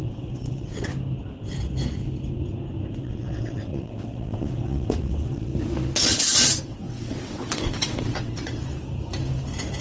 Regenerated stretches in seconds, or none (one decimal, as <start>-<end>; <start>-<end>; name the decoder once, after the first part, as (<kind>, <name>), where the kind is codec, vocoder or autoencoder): 0.0-0.9 (vocoder, WaveNeXt); 3.0-5.5; 6.6-8.6